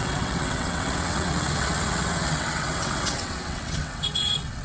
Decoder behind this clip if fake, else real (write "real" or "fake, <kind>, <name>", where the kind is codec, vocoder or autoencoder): fake, vocoder, WaveNeXt